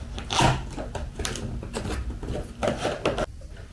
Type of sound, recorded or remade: recorded